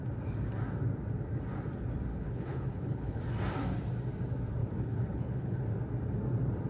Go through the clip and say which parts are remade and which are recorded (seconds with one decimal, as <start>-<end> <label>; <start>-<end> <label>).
0.0-2.1 recorded; 2.1-3.2 remade; 3.2-4.6 recorded; 4.6-5.6 remade; 5.6-6.7 recorded